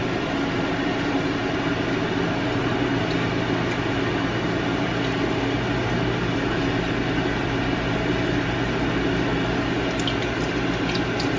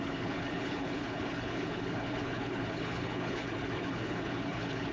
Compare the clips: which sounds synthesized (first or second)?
second